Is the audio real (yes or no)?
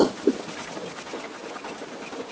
yes